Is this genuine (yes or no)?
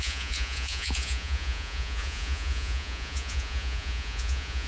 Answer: no